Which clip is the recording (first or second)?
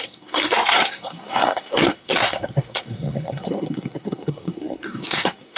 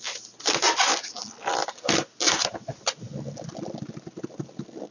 second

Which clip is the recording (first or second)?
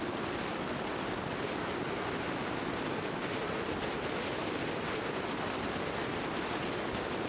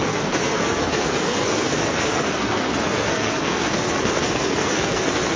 first